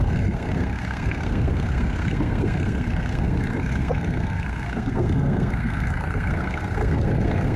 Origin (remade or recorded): remade